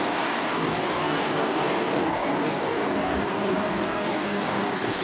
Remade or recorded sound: remade